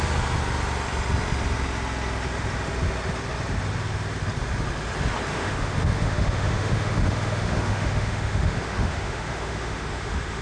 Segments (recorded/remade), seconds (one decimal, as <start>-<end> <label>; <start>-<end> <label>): 0.0-5.3 recorded; 5.3-10.4 remade